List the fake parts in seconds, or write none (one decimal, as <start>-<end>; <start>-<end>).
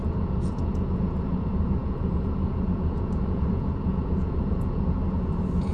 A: 0.0-5.7